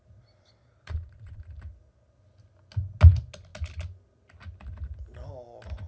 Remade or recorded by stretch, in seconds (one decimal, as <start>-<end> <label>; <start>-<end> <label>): 0.0-0.6 recorded; 0.6-1.4 remade; 1.4-5.9 recorded